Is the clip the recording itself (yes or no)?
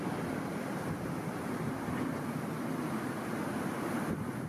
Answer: yes